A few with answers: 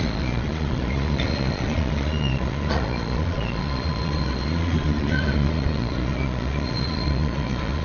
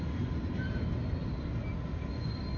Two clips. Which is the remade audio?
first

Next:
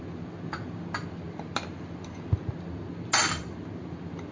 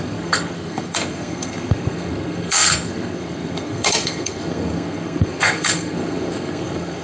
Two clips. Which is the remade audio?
second